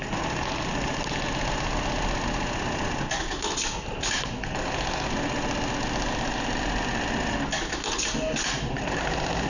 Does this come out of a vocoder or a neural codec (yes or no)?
no